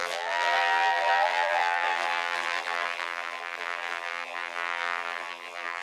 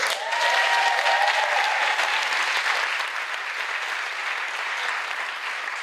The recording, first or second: second